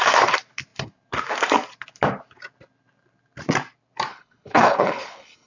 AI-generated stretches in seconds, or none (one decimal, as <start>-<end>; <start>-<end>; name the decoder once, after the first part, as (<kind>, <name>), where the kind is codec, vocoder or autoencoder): 4.1-5.5 (codec, HILCodec)